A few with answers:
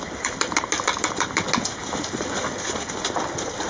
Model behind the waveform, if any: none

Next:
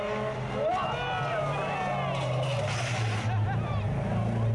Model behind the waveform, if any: none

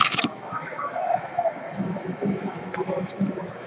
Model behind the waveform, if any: autoencoder, DAC-VAE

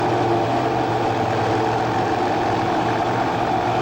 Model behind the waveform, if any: none